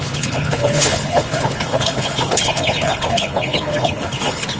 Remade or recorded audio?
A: remade